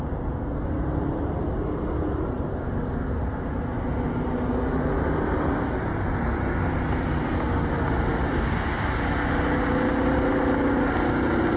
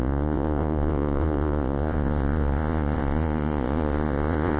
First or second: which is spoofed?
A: second